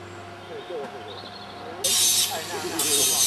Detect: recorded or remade recorded